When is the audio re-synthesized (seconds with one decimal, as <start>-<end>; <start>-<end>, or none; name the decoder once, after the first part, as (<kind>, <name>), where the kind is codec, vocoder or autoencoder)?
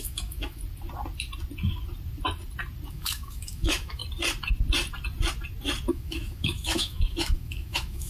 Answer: 0.0-0.6 (autoencoder, DAC-VAE); 2.9-4.0; 5.9-8.1